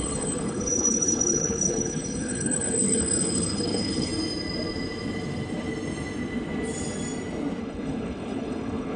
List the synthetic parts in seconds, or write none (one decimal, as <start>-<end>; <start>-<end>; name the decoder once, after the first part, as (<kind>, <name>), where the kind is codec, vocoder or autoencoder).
0.0-4.1 (codec, HILCodec); 7.6-9.0

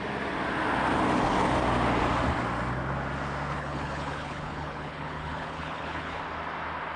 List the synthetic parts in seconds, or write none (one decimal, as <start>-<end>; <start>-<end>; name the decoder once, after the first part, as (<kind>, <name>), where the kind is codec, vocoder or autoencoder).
3.5-6.2 (codec, HILCodec)

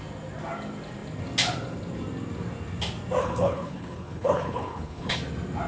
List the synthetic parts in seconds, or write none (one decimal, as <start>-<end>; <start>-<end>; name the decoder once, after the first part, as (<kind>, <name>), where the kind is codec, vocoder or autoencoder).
3.2-5.2 (codec, HILCodec)

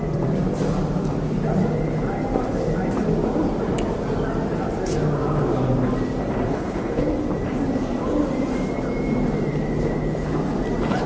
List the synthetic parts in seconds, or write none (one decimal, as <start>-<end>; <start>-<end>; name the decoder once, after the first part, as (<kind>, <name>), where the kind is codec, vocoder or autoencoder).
6.5-7.1 (codec, HILCodec)

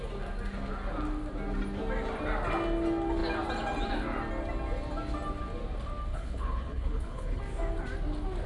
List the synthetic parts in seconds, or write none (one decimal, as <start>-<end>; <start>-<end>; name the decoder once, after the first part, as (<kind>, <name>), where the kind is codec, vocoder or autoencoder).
6.1-7.4 (codec, HILCodec)

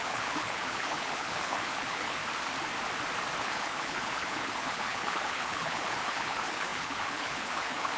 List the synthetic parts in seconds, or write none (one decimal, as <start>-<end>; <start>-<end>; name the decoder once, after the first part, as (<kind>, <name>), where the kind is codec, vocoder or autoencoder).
0.0-2.2 (codec, HILCodec); 3.4-8.0